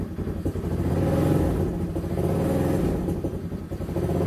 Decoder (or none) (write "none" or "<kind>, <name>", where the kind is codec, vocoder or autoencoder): none